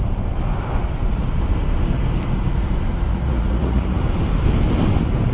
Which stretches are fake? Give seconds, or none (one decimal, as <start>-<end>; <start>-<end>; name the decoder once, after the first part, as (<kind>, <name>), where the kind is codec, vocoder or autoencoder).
3.1-4.0 (vocoder, Vocos)